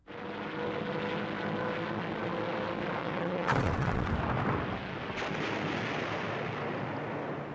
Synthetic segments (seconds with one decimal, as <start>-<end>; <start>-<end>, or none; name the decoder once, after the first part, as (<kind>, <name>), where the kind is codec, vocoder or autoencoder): 3.0-4.1 (vocoder, WaveNeXt)